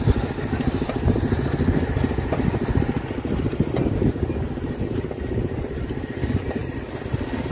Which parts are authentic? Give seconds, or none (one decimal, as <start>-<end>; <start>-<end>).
0.0-7.5

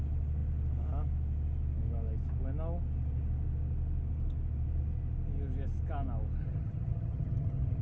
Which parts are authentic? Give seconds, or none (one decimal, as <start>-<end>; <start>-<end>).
0.0-6.4

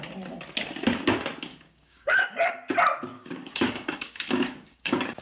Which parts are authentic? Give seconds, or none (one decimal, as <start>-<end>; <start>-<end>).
0.0-1.5; 2.5-3.1

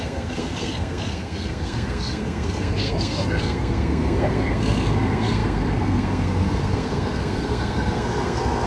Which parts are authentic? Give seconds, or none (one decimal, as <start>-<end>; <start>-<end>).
none

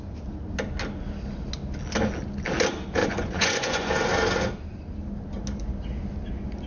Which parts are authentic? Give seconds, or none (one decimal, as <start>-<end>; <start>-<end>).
0.0-3.0; 3.9-6.7